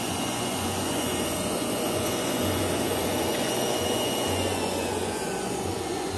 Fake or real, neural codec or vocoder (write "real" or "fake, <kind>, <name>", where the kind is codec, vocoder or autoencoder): fake, vocoder, Vocos